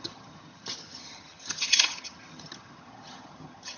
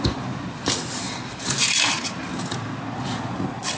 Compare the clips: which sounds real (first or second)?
second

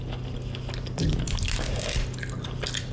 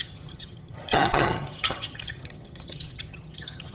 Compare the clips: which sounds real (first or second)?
first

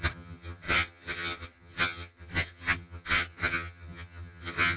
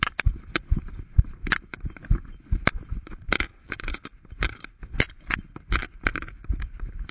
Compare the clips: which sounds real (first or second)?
second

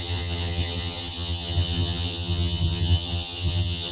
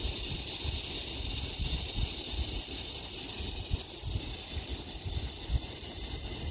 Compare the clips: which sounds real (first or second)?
second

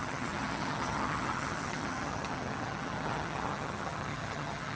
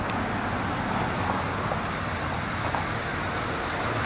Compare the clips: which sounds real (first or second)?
second